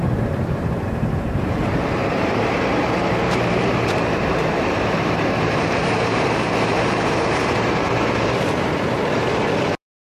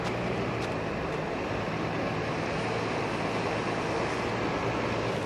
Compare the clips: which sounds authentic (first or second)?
second